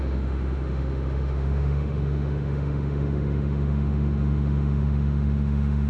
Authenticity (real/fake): fake